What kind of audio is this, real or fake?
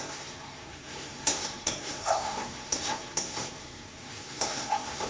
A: fake